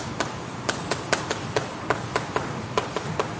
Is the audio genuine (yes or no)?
no